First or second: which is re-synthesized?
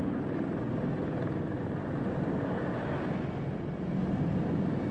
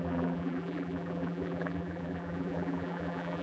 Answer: second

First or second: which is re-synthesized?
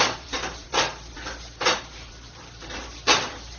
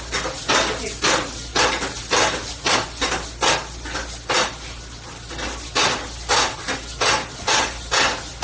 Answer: first